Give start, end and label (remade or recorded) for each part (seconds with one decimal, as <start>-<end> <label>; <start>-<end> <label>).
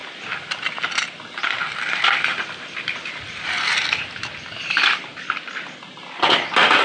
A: 0.0-6.8 recorded